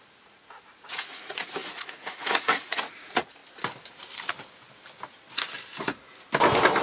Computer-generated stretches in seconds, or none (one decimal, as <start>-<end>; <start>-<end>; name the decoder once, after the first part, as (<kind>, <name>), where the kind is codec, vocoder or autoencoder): 0.0-3.4 (vocoder, Vocos)